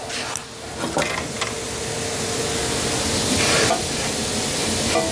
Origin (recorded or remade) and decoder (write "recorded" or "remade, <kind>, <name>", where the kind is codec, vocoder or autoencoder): recorded